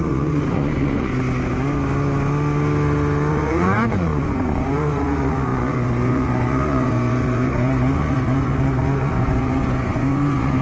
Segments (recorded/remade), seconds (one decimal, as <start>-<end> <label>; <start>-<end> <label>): 0.0-1.1 remade; 1.1-3.3 recorded; 3.3-10.6 remade